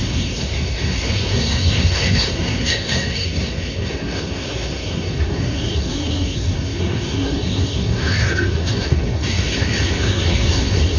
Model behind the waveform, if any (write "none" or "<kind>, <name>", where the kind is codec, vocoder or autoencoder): codec, SNAC